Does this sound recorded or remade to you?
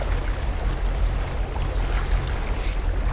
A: recorded